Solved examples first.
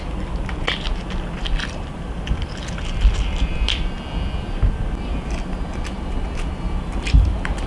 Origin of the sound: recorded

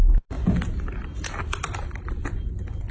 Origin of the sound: recorded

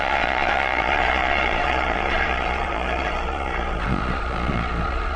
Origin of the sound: remade